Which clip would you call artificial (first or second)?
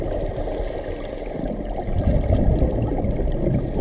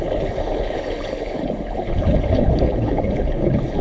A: second